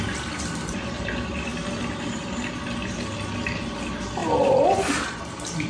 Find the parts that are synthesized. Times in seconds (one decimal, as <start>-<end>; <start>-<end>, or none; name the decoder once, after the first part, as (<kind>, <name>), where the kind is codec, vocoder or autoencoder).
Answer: none